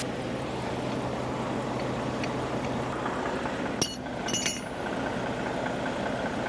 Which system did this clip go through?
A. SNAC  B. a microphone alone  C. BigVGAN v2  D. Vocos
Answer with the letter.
B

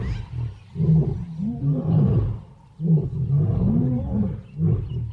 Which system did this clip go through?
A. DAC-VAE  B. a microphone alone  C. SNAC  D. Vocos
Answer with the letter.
B